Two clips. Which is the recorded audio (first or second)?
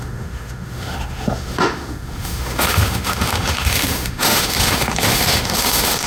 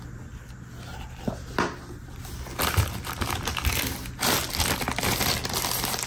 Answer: second